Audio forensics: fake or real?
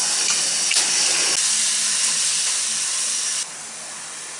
real